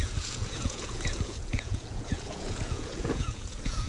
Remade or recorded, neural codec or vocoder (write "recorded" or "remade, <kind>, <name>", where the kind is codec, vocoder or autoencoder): remade, vocoder, Vocos